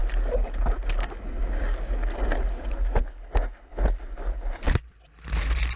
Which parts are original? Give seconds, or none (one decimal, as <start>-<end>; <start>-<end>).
0.0-5.8